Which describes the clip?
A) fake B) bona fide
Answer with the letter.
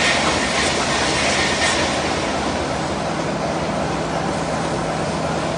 B